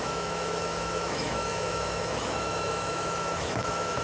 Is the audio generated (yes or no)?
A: yes